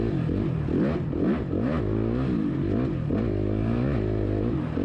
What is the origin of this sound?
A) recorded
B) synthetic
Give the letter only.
A